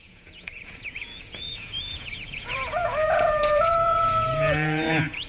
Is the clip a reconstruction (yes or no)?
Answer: yes